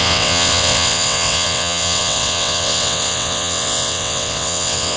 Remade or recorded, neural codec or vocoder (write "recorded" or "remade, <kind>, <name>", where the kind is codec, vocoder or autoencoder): remade, vocoder, WaveNeXt